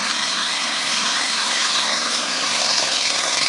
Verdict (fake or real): fake